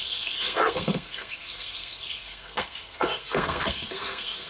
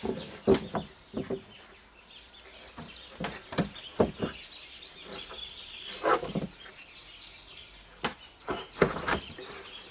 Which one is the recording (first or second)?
second